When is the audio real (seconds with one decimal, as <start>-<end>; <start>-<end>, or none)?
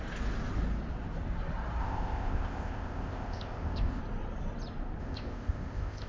0.0-1.8; 4.0-5.0